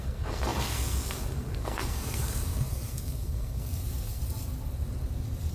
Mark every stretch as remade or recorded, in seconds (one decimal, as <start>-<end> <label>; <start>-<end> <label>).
0.0-4.2 remade; 4.2-5.5 recorded